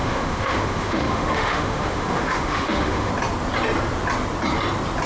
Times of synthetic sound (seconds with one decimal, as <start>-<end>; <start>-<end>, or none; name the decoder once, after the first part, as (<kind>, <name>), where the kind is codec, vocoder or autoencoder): 0.0-3.1 (autoencoder, DAC-VAE)